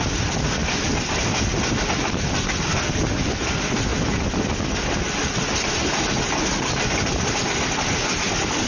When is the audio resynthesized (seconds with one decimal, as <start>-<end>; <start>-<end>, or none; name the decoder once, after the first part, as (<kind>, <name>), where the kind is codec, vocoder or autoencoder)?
none